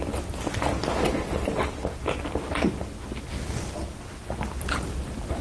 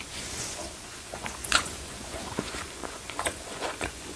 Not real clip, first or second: second